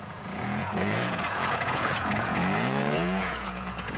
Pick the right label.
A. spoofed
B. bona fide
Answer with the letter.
A